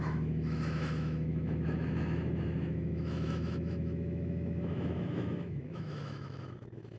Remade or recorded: remade